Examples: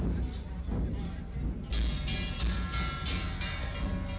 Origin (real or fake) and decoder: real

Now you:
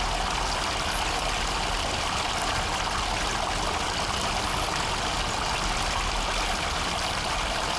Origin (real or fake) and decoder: real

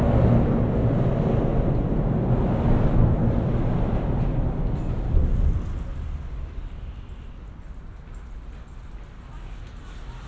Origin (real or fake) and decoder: real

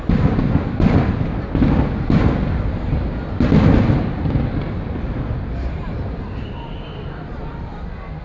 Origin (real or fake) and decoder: real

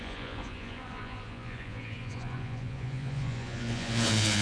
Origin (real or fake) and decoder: fake, vocoder, Vocos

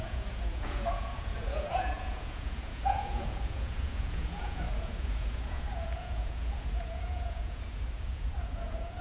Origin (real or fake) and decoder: fake, vocoder, Vocos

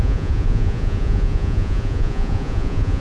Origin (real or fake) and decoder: fake, vocoder, Vocos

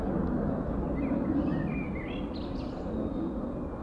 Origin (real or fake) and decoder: real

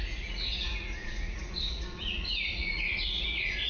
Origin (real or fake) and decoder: fake, vocoder, Vocos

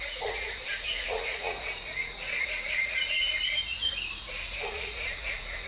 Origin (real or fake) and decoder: fake, vocoder, Vocos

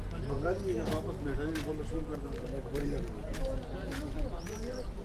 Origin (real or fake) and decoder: real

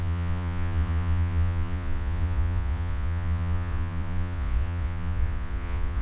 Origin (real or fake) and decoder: fake, vocoder, Vocos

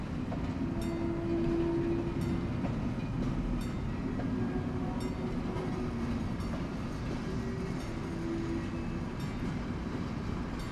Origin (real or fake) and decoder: real